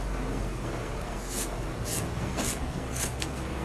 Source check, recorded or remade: remade